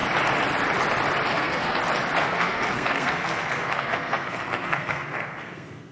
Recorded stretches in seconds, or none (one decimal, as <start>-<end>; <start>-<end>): 0.0-1.3; 1.8-2.2